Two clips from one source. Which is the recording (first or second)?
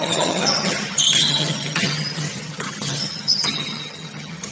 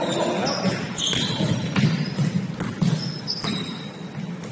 second